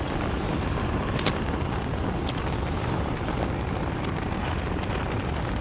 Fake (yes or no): no